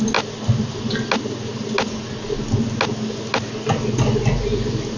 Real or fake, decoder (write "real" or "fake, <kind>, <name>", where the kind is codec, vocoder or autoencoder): real